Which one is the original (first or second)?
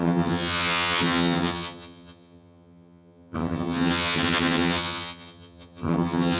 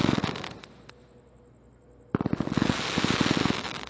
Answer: second